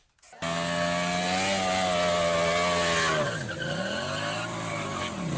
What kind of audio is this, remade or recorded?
recorded